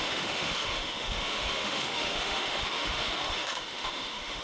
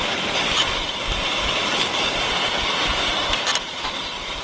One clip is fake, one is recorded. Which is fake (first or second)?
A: first